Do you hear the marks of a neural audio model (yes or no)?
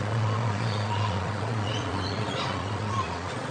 yes